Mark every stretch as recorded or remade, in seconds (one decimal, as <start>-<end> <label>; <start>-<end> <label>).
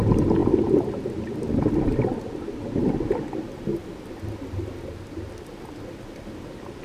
0.0-6.8 recorded